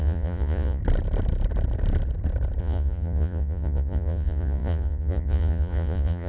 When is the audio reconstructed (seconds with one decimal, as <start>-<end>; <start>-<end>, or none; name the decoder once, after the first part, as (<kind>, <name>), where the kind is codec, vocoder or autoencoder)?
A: 0.0-0.8 (vocoder, Vocos); 2.6-6.3